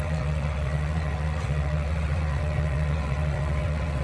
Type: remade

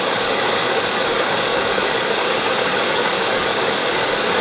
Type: remade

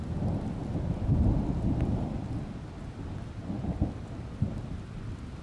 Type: recorded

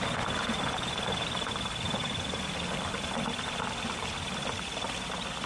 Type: recorded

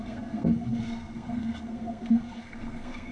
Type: remade